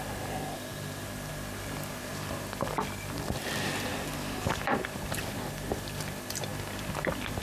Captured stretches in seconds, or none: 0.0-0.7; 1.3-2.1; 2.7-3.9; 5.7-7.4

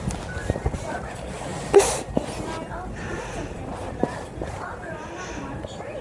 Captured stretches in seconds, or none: 0.0-6.0